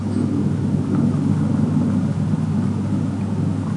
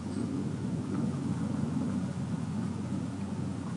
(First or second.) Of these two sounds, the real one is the first